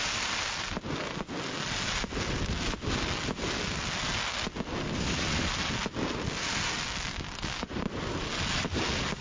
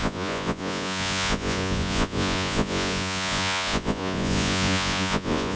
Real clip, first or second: first